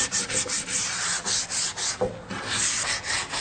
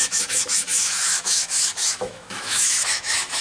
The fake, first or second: second